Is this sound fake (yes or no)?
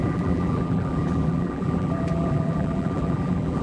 yes